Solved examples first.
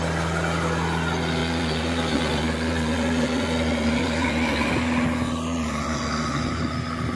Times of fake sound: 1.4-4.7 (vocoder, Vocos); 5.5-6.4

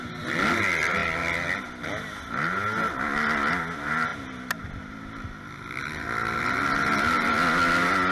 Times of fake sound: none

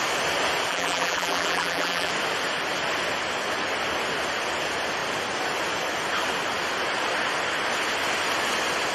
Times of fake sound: 0.7-2.1 (vocoder, BigVGAN v2)

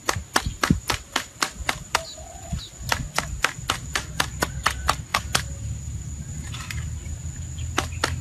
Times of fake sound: none

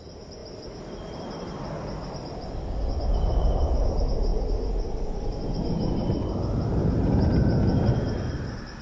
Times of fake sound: none

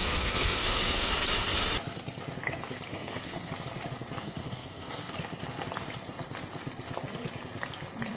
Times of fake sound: 0.0-1.1 (codec, SNAC); 2.9-3.5; 4.2-5.1

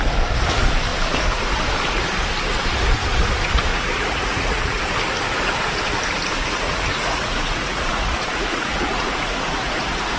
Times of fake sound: 3.7-4.8 (vocoder, Vocos); 6.4-10.2